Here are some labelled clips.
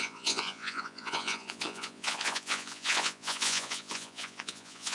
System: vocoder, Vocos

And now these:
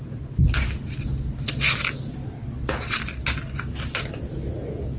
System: none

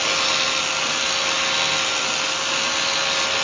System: none